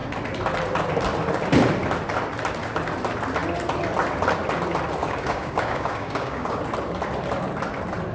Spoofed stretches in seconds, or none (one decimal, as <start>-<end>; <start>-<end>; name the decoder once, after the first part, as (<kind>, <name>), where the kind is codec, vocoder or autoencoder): 5.0-6.6 (codec, DAC)